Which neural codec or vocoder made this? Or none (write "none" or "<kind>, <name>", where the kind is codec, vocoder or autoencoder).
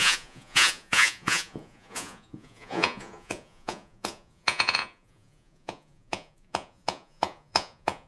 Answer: vocoder, Vocos